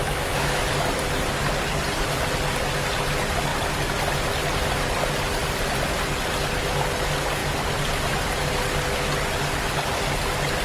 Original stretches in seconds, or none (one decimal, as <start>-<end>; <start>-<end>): 0.6-10.6